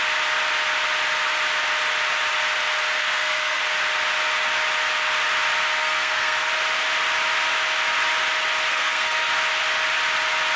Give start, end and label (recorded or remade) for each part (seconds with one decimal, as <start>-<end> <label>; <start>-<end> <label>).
0.0-3.0 recorded; 3.0-3.6 remade; 3.6-5.8 recorded; 5.8-6.5 remade; 6.5-8.7 recorded; 8.7-9.3 remade; 9.3-10.6 recorded